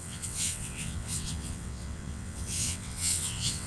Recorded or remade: remade